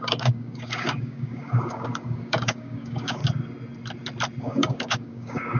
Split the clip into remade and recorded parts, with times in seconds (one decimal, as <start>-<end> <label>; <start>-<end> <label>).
0.0-3.2 remade; 3.2-4.4 recorded; 4.4-5.6 remade